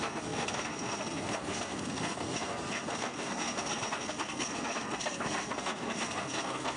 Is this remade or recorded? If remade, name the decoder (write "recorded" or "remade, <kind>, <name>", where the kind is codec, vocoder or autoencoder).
remade, codec, SNAC